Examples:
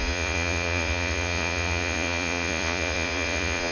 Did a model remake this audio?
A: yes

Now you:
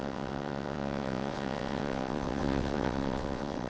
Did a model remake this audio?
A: yes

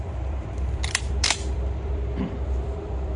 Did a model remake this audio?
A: yes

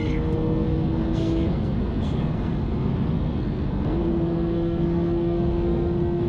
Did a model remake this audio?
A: yes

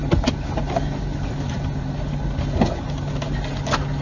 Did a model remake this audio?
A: no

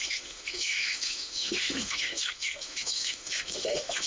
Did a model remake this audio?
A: yes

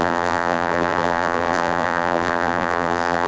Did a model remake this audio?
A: yes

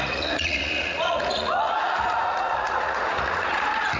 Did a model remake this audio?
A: yes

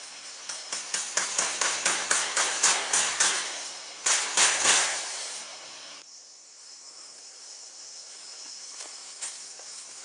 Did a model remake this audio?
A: yes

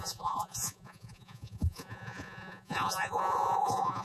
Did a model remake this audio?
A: yes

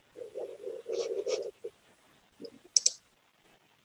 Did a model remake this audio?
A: no